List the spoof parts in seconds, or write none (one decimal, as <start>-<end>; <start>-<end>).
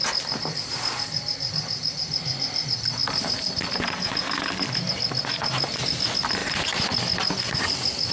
0.0-3.0; 4.9-6.4